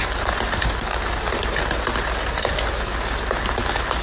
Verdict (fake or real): real